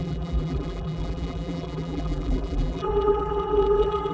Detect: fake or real fake